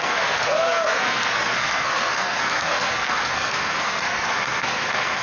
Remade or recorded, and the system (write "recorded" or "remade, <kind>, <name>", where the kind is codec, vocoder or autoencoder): remade, codec, SNAC